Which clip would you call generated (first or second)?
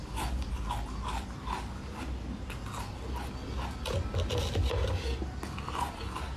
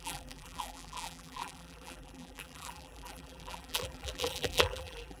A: second